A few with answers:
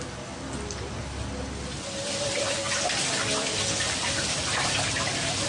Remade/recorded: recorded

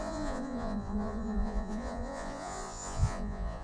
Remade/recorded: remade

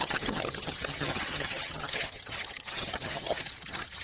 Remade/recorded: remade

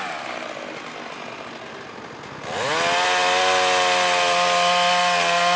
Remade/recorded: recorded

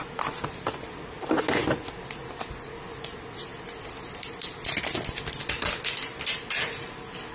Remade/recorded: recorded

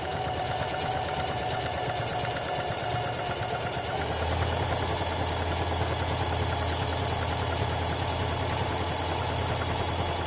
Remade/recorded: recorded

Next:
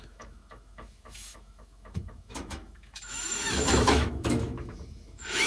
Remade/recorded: remade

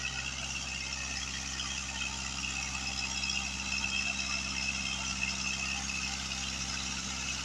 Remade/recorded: recorded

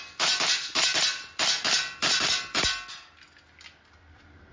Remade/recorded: recorded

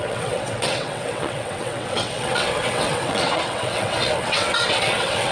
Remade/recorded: remade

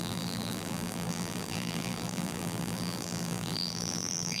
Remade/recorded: remade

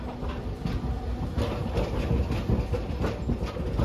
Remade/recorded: recorded